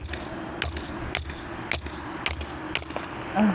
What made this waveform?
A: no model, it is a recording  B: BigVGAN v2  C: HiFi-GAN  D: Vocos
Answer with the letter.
A